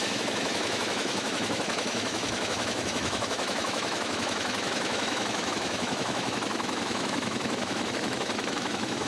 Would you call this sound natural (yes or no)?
no